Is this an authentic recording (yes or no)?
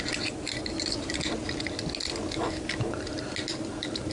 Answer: yes